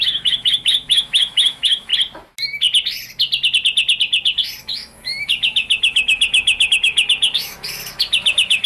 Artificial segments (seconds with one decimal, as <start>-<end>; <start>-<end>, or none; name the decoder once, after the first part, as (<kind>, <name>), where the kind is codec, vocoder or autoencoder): 0.0-1.9 (autoencoder, DAC-VAE); 4.6-8.7